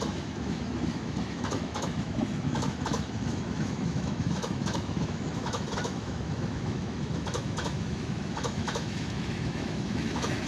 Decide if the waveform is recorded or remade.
remade